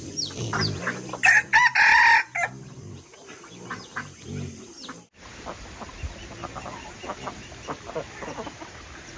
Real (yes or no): yes